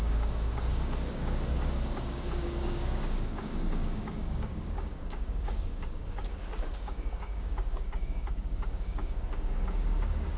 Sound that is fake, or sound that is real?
fake